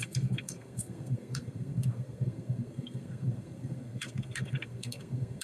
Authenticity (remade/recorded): remade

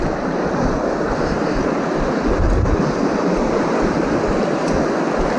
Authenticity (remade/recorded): recorded